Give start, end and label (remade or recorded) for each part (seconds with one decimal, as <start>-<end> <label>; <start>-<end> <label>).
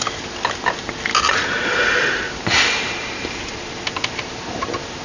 0.0-5.0 recorded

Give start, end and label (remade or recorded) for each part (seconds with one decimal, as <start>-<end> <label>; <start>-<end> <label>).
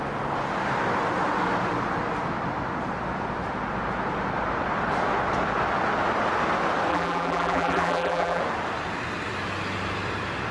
0.0-6.9 recorded; 6.9-8.4 remade; 8.4-10.5 recorded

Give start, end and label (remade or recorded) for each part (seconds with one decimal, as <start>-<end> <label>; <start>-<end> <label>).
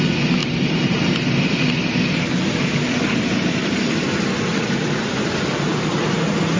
0.0-0.4 recorded; 0.4-3.8 remade; 3.8-4.5 recorded; 4.5-5.7 remade; 5.7-6.6 recorded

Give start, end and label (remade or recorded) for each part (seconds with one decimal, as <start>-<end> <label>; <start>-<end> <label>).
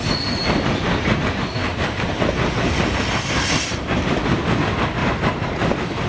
0.0-1.6 recorded; 1.6-4.2 remade; 4.2-5.0 recorded; 5.0-6.1 remade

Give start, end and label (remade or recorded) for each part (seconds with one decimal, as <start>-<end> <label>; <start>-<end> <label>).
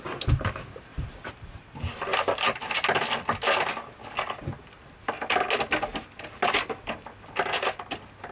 0.0-0.9 recorded; 0.9-2.7 remade; 2.7-8.3 recorded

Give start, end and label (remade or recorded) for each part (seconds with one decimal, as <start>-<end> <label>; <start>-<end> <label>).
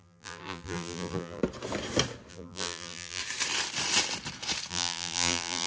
0.0-1.4 remade; 1.4-2.3 recorded; 2.3-3.2 remade; 3.2-4.7 recorded; 4.7-5.7 remade